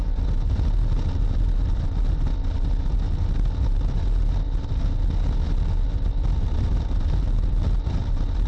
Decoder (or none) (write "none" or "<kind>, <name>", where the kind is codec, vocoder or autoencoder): none